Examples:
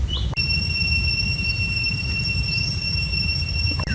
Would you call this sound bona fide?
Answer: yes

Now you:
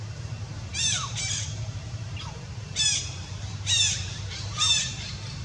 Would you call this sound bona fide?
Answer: no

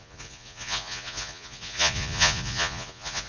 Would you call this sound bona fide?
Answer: no